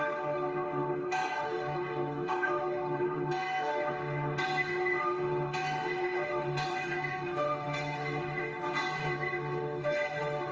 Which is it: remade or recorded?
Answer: remade